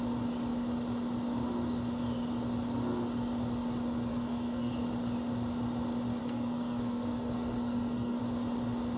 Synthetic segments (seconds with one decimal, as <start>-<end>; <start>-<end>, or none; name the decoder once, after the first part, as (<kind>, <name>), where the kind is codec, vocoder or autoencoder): 4.1-4.7 (codec, SNAC); 6.2-8.2

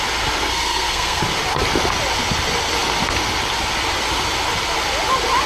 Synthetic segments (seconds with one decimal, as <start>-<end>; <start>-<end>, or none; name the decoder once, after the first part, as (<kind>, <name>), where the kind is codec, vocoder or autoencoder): 0.5-1.2 (codec, SNAC)

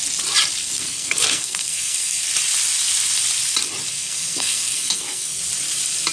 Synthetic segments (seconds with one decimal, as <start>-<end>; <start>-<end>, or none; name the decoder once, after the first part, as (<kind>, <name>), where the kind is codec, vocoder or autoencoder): 0.6-2.2 (codec, SNAC); 3.9-5.4

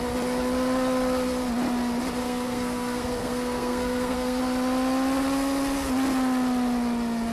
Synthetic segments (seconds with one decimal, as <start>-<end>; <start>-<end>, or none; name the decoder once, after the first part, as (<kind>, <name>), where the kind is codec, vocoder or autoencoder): 2.2-4.4 (codec, SNAC)

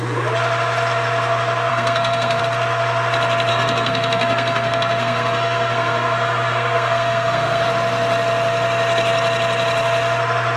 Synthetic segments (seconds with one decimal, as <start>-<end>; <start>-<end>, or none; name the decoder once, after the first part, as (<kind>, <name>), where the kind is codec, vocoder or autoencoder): 1.7-2.4 (codec, SNAC); 3.5-7.7

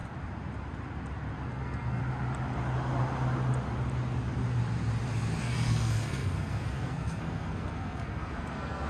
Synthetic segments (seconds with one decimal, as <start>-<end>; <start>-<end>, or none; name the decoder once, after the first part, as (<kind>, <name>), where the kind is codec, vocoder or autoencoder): 1.5-2.0 (codec, SNAC); 5.4-8.9

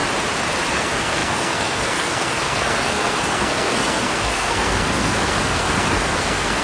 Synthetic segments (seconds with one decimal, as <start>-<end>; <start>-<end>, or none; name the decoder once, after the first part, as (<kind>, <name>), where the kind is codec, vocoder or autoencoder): 0.7-6.6 (codec, SNAC)